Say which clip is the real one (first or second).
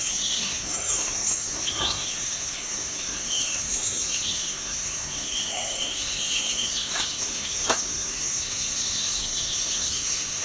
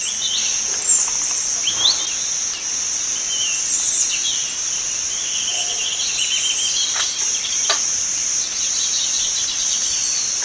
second